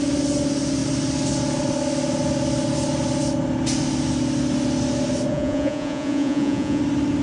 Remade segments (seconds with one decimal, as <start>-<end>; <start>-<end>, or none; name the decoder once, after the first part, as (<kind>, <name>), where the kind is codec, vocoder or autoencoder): 5.3-6.8 (vocoder, Vocos)